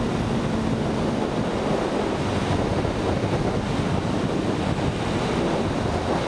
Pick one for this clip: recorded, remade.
recorded